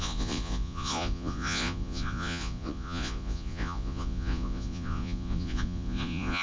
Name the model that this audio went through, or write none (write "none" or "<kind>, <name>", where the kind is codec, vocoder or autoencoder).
vocoder, Vocos